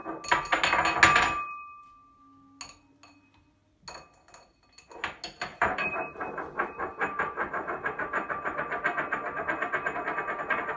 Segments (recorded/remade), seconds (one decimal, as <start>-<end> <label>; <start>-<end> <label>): 0.0-5.5 recorded; 5.5-8.1 remade; 8.1-10.8 recorded